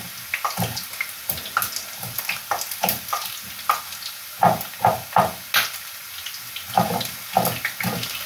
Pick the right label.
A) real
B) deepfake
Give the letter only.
A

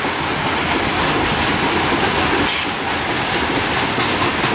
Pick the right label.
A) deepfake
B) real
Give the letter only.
B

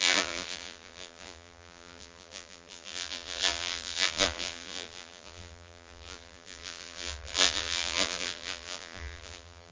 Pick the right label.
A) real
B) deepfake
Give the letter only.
B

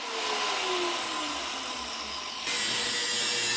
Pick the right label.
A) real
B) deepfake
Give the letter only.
A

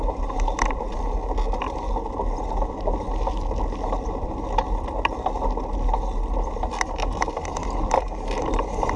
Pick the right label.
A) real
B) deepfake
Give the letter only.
A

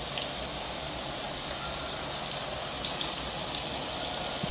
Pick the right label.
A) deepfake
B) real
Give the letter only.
B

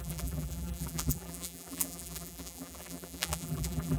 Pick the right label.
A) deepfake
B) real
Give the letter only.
A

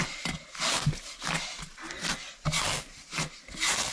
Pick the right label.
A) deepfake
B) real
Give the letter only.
B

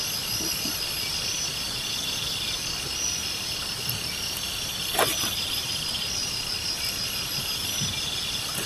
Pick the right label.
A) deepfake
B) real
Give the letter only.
B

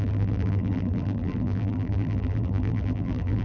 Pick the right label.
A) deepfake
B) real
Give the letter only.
A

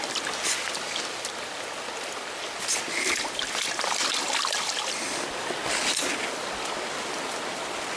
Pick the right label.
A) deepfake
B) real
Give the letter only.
B